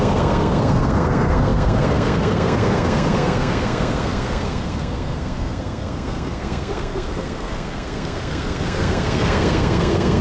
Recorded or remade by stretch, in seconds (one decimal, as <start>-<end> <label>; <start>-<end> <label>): 0.0-10.2 remade